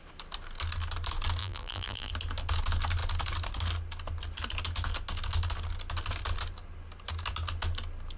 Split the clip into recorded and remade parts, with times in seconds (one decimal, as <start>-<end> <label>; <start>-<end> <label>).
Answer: 0.0-1.4 recorded; 1.4-2.1 remade; 2.1-8.2 recorded